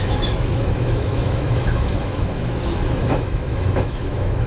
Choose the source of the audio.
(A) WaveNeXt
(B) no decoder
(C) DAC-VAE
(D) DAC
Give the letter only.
C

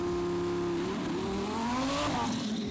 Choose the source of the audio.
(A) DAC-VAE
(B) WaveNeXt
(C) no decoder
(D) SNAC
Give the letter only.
C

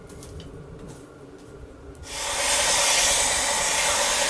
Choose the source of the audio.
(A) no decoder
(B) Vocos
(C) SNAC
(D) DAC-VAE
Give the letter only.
A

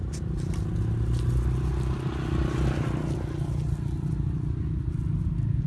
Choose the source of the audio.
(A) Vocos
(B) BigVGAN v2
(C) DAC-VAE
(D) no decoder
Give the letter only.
D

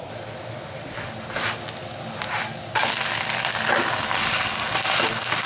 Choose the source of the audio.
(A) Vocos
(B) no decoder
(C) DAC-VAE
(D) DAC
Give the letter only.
B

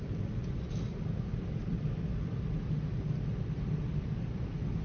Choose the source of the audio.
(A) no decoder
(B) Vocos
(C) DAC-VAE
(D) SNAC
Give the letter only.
A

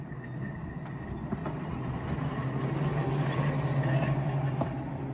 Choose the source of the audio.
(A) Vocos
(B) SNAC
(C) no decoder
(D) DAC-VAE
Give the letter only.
C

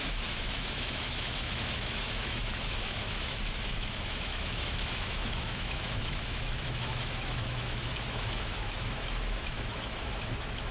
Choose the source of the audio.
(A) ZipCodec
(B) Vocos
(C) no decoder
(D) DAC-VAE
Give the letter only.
D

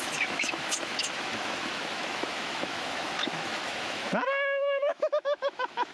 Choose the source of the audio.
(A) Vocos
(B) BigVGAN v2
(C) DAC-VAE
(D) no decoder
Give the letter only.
C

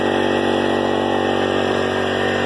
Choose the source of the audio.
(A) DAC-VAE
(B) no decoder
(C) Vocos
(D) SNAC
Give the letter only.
B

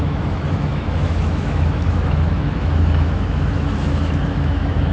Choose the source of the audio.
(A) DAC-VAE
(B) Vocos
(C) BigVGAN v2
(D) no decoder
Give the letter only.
A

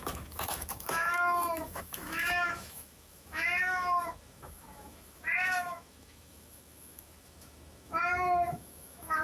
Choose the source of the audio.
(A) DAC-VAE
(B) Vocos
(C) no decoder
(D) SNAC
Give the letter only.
A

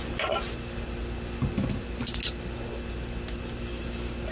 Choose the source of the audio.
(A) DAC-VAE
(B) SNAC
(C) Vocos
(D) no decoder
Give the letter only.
D